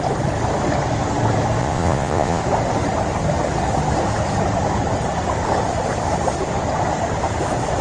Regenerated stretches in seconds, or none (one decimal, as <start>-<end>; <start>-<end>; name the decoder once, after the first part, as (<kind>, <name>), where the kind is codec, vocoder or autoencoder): 1.6-2.4 (vocoder, Vocos)